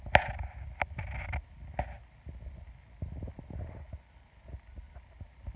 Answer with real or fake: real